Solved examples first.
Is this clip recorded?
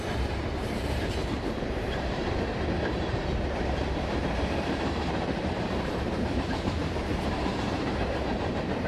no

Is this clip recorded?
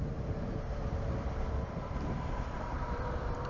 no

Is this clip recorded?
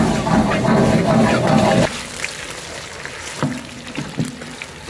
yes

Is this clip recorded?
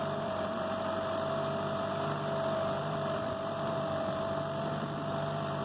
no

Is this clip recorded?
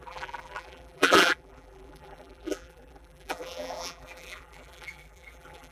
no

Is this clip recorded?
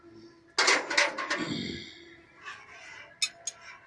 yes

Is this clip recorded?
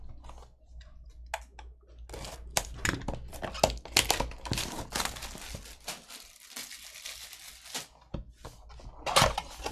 yes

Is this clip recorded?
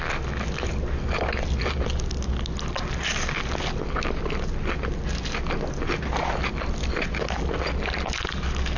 yes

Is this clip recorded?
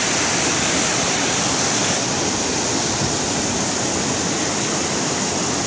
yes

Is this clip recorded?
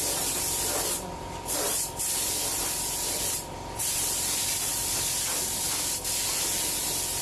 no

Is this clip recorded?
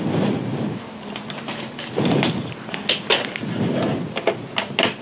yes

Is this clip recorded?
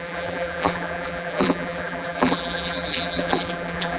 no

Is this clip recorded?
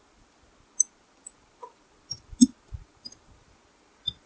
yes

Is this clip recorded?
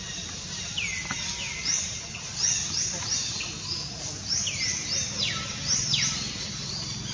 yes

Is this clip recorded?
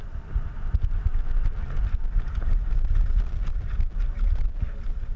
yes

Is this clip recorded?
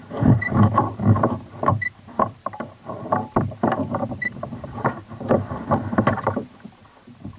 no